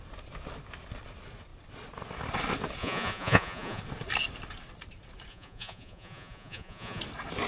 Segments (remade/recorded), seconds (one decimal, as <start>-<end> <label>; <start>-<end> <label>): 0.0-2.8 recorded; 2.8-3.8 remade; 3.8-5.3 recorded; 5.3-7.0 remade; 7.0-7.5 recorded